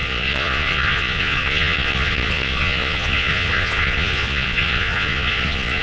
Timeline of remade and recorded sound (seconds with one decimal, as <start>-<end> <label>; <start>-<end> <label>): 0.0-5.8 remade